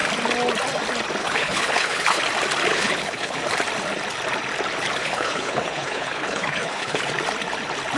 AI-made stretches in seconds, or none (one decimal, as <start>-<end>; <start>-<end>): 1.2-2.2; 2.7-3.4; 5.0-7.0